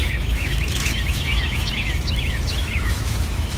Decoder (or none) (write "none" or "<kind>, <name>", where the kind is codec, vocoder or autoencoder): autoencoder, DAC-VAE